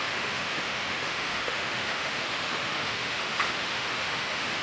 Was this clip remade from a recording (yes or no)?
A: yes